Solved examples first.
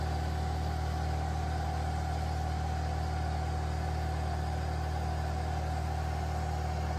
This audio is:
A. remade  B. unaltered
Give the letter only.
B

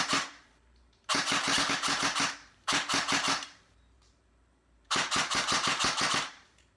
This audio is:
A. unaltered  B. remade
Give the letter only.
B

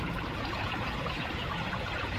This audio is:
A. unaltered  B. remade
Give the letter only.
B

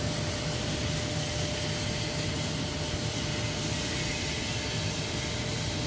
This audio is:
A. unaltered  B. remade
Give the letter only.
A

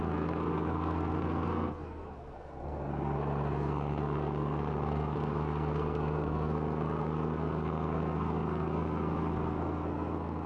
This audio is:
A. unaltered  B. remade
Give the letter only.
B